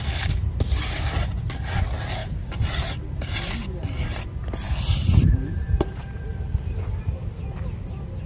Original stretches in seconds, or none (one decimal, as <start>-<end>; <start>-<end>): 0.0-2.2; 7.0-8.3